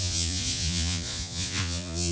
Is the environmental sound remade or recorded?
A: remade